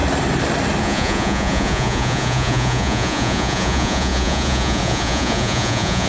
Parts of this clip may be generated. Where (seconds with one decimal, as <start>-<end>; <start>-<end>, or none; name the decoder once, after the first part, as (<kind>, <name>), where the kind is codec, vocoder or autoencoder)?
0.8-6.1 (vocoder, Vocos)